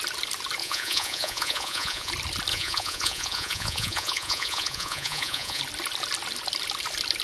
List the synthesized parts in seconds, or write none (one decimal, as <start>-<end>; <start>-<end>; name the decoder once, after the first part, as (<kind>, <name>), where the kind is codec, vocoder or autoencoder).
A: 0.6-2.1 (vocoder, Vocos); 2.5-5.6